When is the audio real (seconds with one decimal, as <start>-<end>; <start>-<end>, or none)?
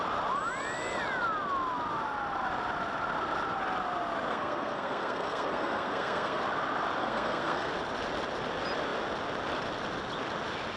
0.0-4.3; 6.4-7.0; 7.7-10.8